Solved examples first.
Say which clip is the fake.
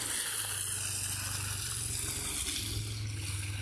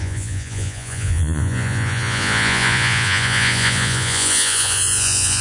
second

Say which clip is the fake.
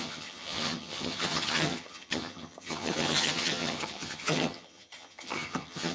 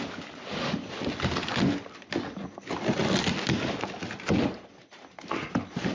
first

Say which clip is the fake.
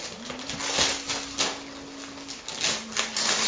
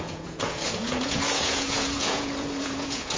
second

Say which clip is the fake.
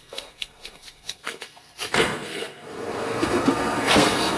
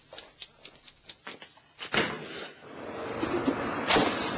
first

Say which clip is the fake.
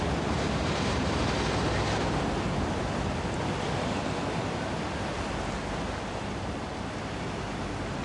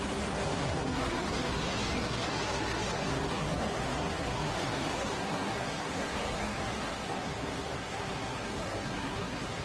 second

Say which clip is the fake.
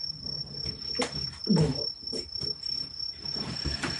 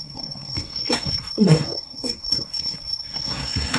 second